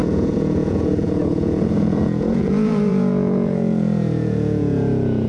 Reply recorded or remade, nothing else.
remade